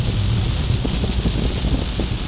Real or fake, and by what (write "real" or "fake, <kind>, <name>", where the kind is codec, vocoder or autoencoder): real